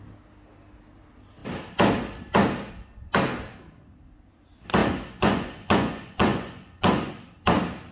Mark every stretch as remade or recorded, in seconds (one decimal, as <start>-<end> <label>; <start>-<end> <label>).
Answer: 0.0-4.8 recorded; 4.8-7.1 remade; 7.1-7.9 recorded